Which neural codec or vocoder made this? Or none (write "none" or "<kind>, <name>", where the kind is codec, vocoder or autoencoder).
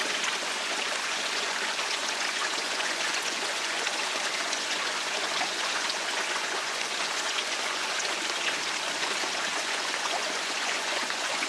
vocoder, Vocos